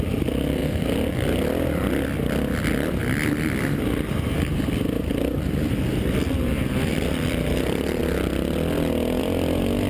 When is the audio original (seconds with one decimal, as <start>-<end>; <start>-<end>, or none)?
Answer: 0.6-2.6; 8.0-9.2